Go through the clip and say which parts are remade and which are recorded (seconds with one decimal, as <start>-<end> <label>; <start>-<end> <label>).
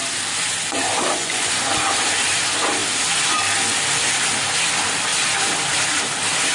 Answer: 0.0-1.2 recorded; 1.2-1.7 remade; 1.7-6.5 recorded